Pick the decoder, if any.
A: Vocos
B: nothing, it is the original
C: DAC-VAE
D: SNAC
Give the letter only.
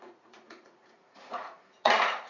A